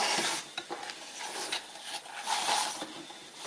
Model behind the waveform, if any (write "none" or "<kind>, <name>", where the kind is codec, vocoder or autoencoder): none